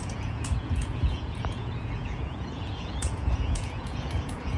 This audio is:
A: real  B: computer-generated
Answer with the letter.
B